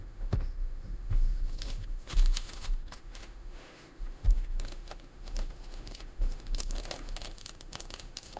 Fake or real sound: fake